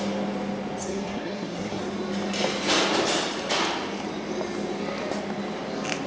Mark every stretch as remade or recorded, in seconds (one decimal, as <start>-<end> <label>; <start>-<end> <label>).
0.0-0.8 recorded; 0.8-1.8 remade; 1.8-6.1 recorded